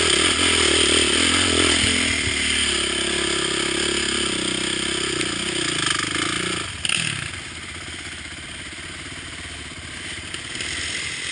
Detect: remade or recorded recorded